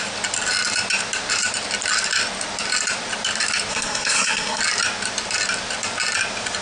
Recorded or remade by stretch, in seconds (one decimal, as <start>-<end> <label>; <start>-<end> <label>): 0.0-3.7 recorded; 3.7-4.6 remade; 4.6-6.6 recorded